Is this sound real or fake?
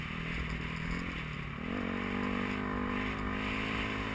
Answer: real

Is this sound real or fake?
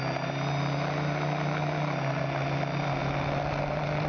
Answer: real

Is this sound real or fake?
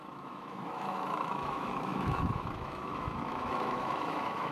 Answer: fake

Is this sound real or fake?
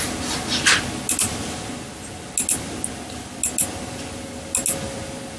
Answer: real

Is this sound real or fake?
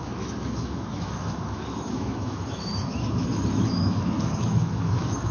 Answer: fake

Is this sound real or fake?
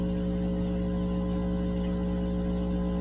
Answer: real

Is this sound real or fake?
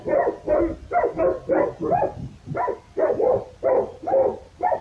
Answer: real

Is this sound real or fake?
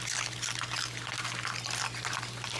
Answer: real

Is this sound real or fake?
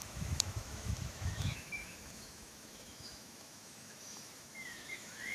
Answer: fake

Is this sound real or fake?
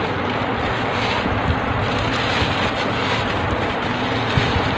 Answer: real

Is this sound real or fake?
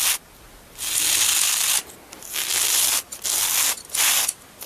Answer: real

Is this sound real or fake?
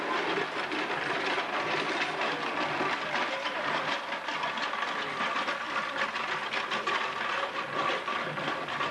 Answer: real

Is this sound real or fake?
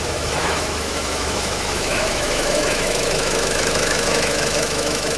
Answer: fake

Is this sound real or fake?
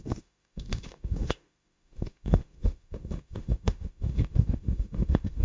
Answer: fake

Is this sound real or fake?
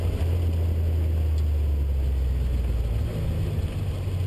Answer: real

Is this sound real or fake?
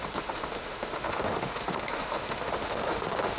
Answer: fake